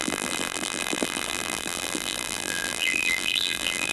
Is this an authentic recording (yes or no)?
no